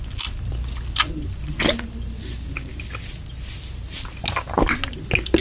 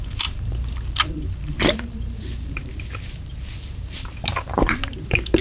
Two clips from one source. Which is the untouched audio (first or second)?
first